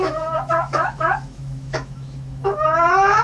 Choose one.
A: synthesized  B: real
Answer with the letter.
A